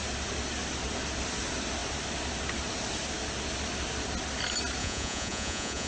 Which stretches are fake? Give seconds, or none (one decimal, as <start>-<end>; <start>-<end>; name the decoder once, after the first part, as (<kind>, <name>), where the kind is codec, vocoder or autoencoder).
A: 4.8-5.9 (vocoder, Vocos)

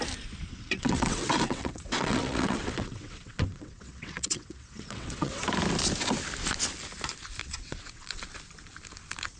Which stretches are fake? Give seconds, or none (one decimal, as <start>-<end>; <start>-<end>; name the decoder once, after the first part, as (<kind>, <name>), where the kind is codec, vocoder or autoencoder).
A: 0.5-5.4 (vocoder, WaveNeXt); 7.4-8.2

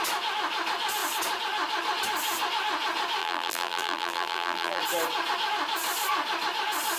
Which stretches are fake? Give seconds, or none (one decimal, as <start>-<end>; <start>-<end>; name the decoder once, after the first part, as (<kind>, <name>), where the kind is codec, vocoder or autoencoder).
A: 3.2-4.8 (vocoder, BigVGAN v2)